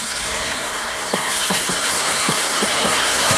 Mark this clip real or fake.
fake